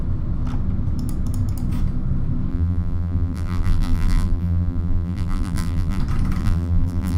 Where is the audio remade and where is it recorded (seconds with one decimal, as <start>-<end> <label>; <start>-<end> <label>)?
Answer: 0.0-2.5 recorded; 2.5-6.0 remade; 6.0-6.4 recorded; 6.4-7.2 remade